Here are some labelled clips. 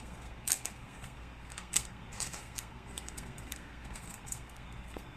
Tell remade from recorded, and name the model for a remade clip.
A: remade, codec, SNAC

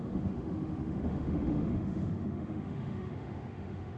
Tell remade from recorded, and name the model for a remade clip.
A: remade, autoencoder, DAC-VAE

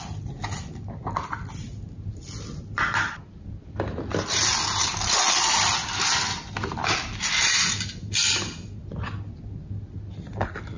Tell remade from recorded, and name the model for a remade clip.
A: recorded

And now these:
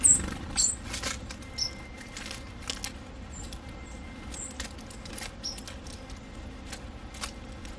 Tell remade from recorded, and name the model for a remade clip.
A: recorded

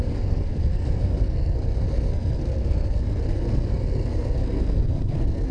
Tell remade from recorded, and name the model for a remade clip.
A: remade, codec, SNAC